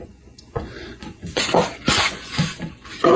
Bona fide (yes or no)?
no